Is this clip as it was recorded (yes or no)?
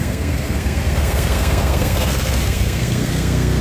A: no